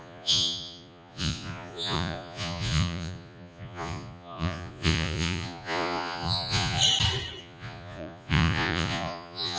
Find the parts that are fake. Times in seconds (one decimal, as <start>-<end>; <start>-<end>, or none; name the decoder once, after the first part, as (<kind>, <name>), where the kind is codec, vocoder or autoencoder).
0.0-6.8 (vocoder, Vocos); 7.4-9.6